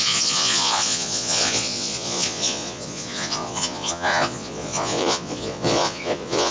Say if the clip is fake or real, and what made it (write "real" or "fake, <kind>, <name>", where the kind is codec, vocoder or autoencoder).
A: fake, vocoder, Vocos